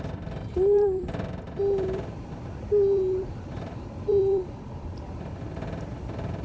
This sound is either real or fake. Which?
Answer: fake